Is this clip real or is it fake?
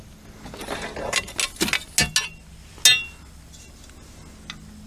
real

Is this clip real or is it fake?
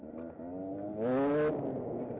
real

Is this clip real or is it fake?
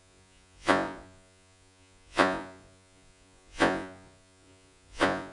fake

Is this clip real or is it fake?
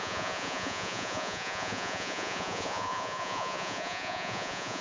fake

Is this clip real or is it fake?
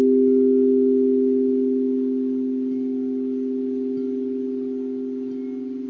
real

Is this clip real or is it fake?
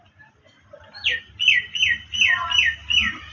real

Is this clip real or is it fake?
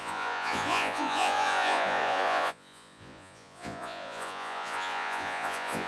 fake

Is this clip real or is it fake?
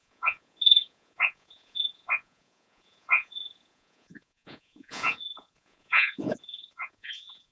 fake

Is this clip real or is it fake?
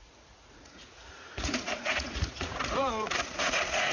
fake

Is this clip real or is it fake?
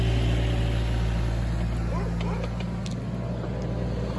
real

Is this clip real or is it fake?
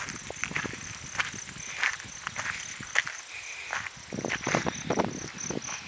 real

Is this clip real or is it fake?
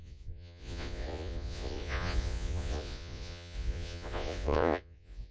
fake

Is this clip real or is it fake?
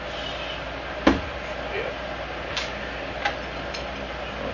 real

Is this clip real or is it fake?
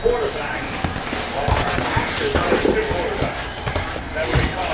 real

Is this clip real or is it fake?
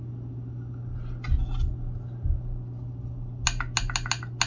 real